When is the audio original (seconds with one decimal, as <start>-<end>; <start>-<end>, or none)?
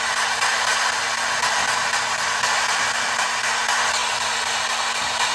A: 0.0-5.3